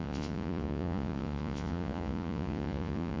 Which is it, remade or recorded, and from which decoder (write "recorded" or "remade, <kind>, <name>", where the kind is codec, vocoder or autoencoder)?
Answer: remade, vocoder, Vocos